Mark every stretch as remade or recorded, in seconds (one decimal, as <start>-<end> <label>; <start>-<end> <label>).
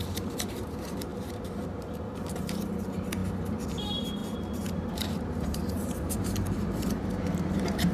0.0-3.2 remade; 3.2-3.8 recorded; 3.8-7.9 remade